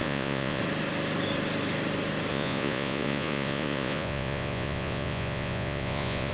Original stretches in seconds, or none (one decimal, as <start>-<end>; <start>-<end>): 0.6-2.3